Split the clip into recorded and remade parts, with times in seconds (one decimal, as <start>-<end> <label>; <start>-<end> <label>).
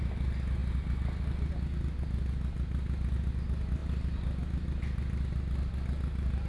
0.0-6.5 recorded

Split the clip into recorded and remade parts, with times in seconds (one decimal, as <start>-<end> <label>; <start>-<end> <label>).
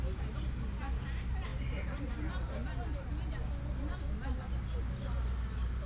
0.0-5.9 recorded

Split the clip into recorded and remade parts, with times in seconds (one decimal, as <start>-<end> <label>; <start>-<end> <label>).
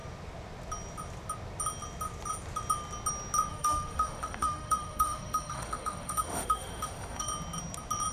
0.0-3.5 recorded; 3.5-7.3 remade; 7.3-8.1 recorded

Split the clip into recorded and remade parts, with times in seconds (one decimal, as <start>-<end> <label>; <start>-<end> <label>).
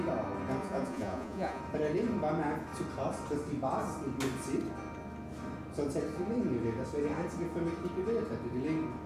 0.0-0.6 recorded; 0.6-1.6 remade; 1.6-9.1 recorded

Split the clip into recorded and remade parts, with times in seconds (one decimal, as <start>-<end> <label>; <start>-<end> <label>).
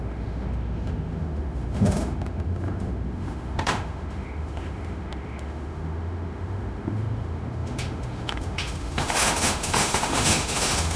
0.0-11.0 remade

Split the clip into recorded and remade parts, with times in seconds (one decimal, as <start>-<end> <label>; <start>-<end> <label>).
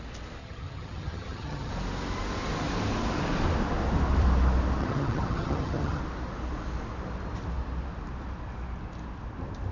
0.0-0.4 recorded; 0.4-1.7 remade; 1.7-4.8 recorded; 4.8-6.0 remade; 6.0-9.7 recorded